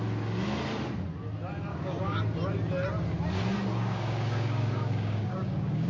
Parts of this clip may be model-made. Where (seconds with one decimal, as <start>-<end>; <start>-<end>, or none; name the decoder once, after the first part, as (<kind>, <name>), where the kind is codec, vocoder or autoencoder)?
1.7-2.2 (codec, DAC); 3.7-5.9